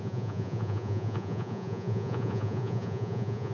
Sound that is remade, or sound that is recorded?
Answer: remade